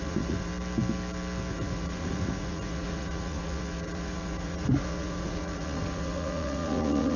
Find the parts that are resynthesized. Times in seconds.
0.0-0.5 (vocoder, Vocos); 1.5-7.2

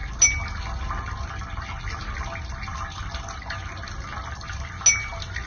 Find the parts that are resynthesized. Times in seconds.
none

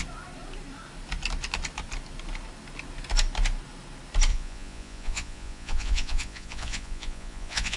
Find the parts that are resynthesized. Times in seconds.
4.3-7.8 (vocoder, Vocos)

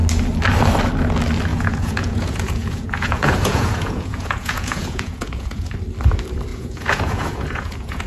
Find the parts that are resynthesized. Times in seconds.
1.5-5.7 (vocoder, Vocos); 6.5-8.1

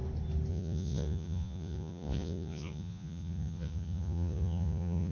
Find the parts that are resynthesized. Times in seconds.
0.5-5.1 (vocoder, Vocos)

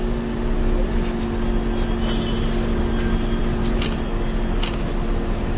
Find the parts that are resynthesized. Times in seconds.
none

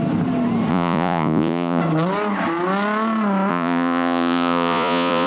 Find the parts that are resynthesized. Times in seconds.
0.7-1.8 (vocoder, Vocos); 3.5-5.3